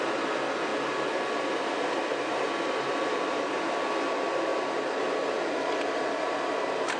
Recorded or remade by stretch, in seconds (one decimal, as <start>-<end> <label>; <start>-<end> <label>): 0.0-7.0 recorded